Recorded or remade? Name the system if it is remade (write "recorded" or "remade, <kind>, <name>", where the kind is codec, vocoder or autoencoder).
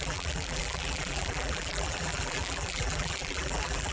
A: remade, vocoder, BigVGAN v2